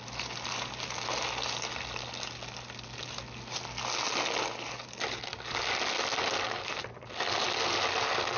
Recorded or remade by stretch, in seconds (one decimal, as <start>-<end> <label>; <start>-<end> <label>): 0.0-8.4 recorded

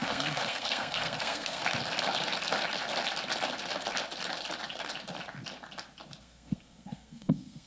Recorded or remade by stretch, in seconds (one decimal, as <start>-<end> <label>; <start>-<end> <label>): 0.0-1.6 remade; 1.6-6.2 recorded; 6.2-7.7 remade

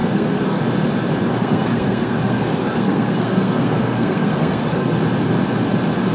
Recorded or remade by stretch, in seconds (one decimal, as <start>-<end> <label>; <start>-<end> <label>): 0.0-0.6 remade; 0.6-1.3 recorded; 1.3-5.0 remade; 5.0-6.1 recorded